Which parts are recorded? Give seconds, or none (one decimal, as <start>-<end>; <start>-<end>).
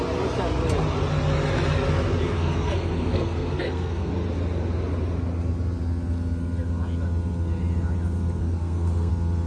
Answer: 0.0-2.3; 4.1-8.4; 9.1-9.5